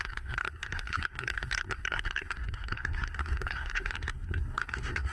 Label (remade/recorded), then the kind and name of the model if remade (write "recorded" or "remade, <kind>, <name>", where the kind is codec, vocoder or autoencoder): remade, codec, SNAC